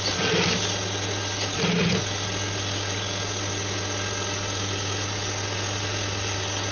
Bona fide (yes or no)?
yes